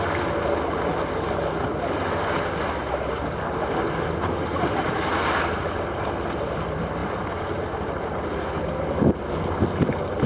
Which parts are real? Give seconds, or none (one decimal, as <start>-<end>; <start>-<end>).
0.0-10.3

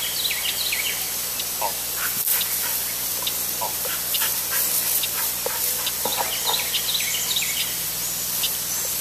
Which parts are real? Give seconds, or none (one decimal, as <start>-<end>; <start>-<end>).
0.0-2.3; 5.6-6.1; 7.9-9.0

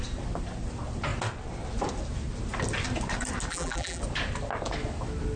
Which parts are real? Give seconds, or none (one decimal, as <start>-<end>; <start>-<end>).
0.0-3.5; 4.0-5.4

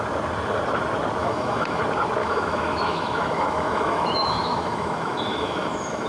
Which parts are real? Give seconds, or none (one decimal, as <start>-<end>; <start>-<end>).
0.0-1.2; 1.8-2.2

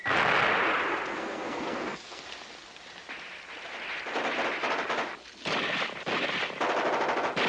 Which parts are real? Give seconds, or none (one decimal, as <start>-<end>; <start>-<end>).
0.0-1.1; 2.2-7.5

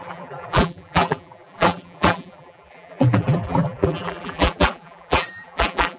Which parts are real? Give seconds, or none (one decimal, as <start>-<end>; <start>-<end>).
none

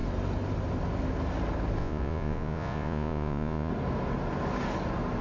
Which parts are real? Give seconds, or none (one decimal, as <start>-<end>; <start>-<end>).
0.0-1.8; 3.7-5.2

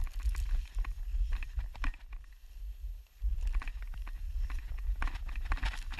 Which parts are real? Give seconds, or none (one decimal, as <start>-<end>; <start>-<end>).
0.0-1.1; 2.3-3.3; 3.8-6.0